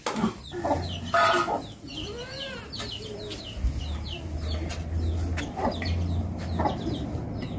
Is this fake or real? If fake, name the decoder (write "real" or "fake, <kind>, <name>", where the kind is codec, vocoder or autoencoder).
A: real